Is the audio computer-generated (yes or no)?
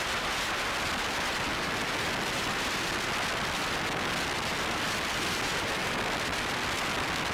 no